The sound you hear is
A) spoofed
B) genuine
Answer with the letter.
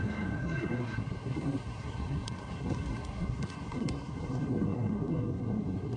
A